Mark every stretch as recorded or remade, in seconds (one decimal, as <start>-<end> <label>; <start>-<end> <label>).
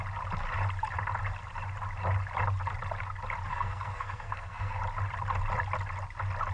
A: 0.0-3.5 recorded; 3.5-4.8 remade; 4.8-6.5 recorded